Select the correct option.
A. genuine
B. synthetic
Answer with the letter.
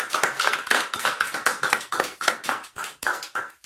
B